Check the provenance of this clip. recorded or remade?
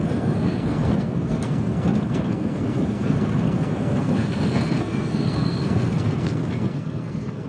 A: remade